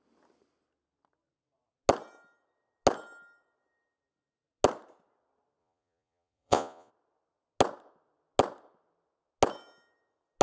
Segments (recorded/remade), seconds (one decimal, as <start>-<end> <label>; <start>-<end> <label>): 0.0-5.6 recorded; 5.6-6.9 remade; 6.9-10.4 recorded

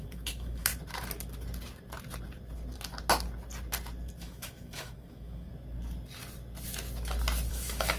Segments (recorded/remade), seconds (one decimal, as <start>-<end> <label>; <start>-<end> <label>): 0.0-0.7 remade; 0.7-4.2 recorded; 4.2-5.5 remade; 5.5-7.5 recorded; 7.5-8.0 remade

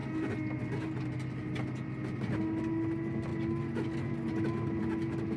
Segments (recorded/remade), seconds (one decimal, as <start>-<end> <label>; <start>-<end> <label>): 0.0-5.4 recorded

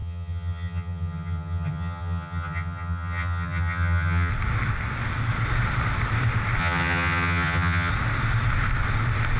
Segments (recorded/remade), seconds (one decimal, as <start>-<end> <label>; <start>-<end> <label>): 0.0-4.3 remade; 4.3-6.6 recorded; 6.6-7.9 remade; 7.9-9.4 recorded

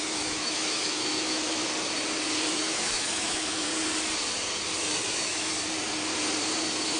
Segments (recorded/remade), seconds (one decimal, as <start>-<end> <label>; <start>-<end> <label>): 0.0-1.6 remade; 1.6-2.5 recorded; 2.5-3.7 remade; 3.7-5.1 recorded; 5.1-5.5 remade; 5.5-7.0 recorded